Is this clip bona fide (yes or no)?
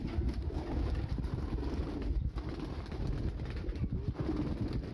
yes